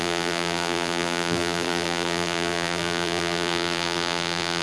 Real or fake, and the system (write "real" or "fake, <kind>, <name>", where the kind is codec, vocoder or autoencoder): fake, vocoder, BigVGAN v2